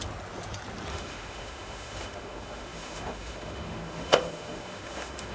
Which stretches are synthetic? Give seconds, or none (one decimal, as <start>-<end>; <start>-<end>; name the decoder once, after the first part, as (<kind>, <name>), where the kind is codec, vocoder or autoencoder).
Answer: 0.9-5.3 (autoencoder, DAC-VAE)